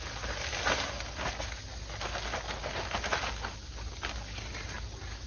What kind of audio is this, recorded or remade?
recorded